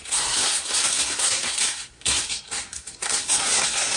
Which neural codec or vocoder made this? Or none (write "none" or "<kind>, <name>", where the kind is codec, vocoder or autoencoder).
codec, SNAC